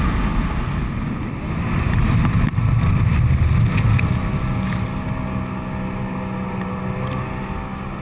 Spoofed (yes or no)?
no